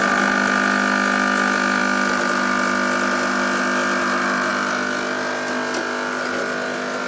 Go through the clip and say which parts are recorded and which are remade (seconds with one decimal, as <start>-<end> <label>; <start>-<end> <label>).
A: 0.0-7.1 recorded

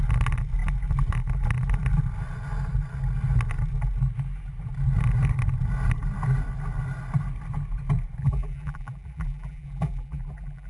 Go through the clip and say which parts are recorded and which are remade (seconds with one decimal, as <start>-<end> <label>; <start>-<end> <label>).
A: 0.0-8.2 recorded; 8.2-10.7 remade

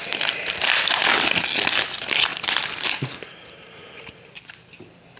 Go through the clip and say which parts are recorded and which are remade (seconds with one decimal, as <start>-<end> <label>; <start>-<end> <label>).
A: 0.0-2.3 recorded; 2.3-4.5 remade; 4.5-5.2 recorded

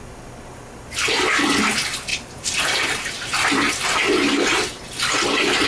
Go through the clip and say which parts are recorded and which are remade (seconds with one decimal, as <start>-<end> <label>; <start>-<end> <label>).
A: 0.0-2.1 recorded; 2.1-3.7 remade; 3.7-5.7 recorded

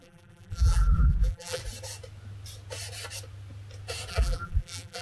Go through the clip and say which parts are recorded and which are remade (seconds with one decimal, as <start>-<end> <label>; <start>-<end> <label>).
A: 0.0-1.6 remade; 1.6-4.1 recorded; 4.1-5.0 remade